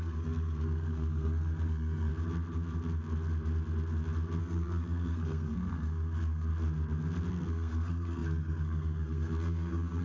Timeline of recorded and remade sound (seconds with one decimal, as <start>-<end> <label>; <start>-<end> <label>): 0.0-2.1 remade; 2.1-4.4 recorded; 4.4-6.5 remade; 6.5-7.3 recorded; 7.3-10.0 remade